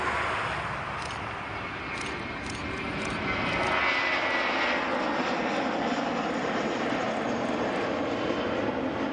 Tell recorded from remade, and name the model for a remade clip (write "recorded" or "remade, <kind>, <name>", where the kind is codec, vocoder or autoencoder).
recorded